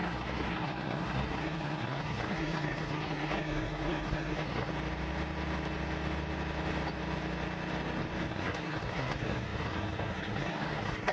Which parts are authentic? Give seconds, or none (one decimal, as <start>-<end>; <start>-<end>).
4.7-8.3